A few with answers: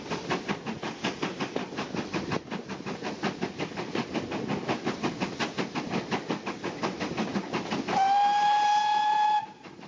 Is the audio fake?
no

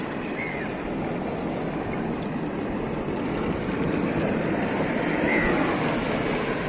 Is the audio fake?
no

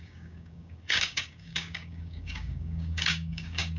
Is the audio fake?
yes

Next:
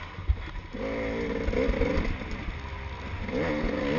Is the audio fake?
no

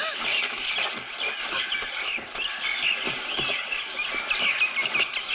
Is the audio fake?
no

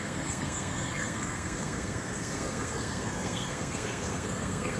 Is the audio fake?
yes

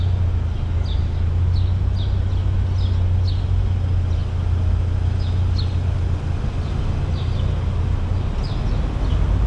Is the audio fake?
no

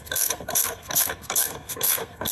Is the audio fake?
yes